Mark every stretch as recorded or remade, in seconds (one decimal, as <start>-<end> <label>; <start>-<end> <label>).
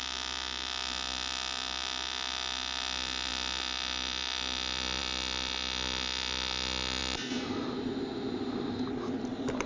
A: 0.0-9.7 recorded